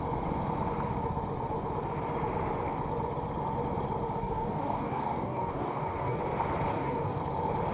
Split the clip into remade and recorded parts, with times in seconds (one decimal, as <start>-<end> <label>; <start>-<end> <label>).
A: 0.0-4.2 recorded; 4.2-6.2 remade; 6.2-6.7 recorded; 6.7-7.2 remade; 7.2-7.7 recorded